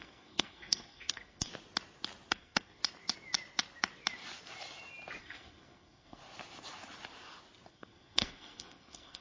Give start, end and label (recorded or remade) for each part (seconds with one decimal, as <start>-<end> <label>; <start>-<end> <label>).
0.0-1.5 remade; 1.5-2.3 recorded; 2.3-2.8 remade; 2.8-5.2 recorded; 5.2-6.2 remade; 6.2-7.7 recorded; 7.7-9.2 remade